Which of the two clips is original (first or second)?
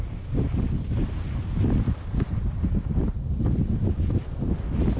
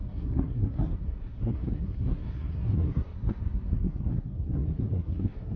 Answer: first